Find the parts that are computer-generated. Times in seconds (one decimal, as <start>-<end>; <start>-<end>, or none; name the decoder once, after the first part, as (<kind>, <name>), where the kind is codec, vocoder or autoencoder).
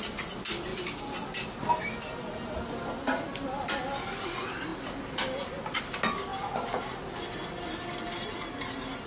none